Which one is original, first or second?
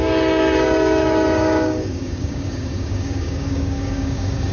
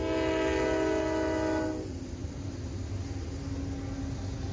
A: second